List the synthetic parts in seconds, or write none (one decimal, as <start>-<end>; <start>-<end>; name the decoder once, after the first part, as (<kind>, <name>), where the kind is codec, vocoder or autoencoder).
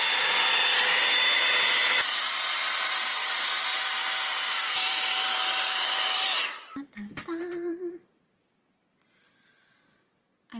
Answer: 3.2-3.9 (vocoder, BigVGAN v2); 4.3-9.0